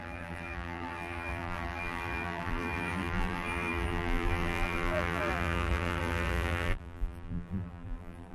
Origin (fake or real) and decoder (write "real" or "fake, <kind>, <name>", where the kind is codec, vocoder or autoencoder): fake, vocoder, BigVGAN v2